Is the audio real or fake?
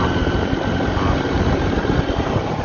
fake